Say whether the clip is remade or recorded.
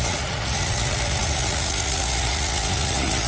remade